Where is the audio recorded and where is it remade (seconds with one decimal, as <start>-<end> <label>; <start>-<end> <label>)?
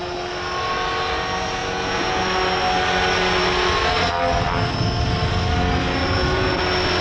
0.0-1.6 recorded; 1.6-2.2 remade; 2.2-6.0 recorded; 6.0-6.6 remade; 6.6-7.0 recorded